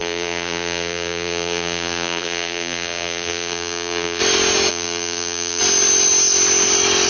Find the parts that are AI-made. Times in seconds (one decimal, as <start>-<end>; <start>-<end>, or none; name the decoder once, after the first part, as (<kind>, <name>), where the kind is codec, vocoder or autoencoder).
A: 0.0-4.2 (vocoder, BigVGAN v2); 4.7-5.6